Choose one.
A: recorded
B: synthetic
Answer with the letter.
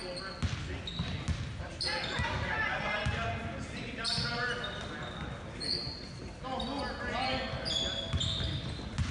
A